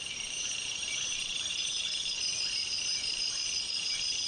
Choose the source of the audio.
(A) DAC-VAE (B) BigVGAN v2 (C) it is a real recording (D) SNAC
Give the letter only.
B